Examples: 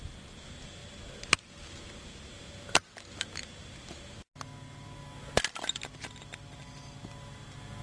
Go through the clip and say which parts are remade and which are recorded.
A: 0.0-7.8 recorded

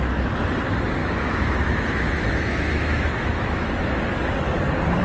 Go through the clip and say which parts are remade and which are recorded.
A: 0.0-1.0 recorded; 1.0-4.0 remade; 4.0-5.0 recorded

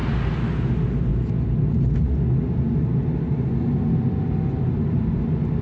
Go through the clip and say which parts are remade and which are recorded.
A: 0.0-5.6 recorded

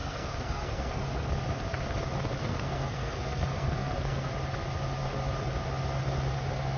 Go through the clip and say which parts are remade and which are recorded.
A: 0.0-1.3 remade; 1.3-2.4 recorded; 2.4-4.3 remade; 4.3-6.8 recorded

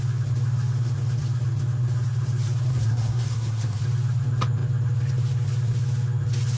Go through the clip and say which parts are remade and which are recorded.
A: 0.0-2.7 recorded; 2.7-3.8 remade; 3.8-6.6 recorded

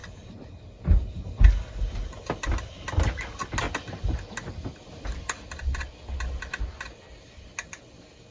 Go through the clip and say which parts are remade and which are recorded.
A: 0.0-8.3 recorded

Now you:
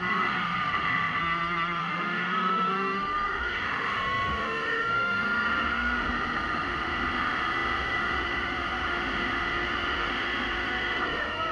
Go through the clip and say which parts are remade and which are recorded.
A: 0.0-1.2 remade; 1.2-1.8 recorded; 1.8-11.5 remade